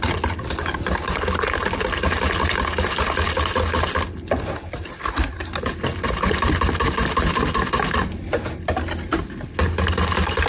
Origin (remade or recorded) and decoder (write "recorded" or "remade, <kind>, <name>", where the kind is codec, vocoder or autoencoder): recorded